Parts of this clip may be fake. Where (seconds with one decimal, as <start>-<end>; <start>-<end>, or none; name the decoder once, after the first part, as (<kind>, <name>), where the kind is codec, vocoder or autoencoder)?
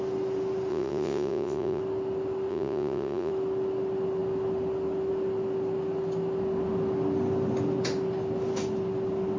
0.7-1.8 (vocoder, Vocos); 2.5-3.3